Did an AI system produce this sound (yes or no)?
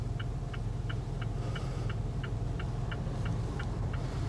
no